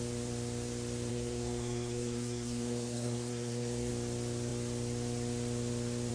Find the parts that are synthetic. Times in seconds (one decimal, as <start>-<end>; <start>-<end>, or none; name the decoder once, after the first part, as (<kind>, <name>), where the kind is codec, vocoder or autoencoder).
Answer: 1.1-3.9 (codec, SNAC)